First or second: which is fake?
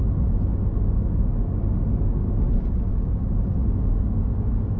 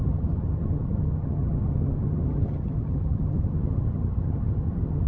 second